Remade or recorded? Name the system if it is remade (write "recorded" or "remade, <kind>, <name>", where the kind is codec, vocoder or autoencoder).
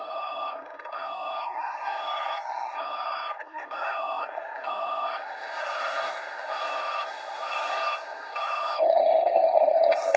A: remade, codec, SNAC